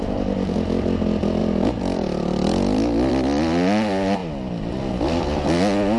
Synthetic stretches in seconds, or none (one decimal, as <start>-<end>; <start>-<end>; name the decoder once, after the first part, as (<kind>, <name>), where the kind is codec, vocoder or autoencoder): 1.4-3.1 (vocoder, BigVGAN v2)